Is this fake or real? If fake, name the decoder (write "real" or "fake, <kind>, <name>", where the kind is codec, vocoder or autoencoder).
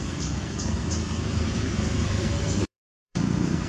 fake, codec, SNAC